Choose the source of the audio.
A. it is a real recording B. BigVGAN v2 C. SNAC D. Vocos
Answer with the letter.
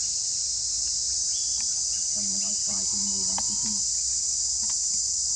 A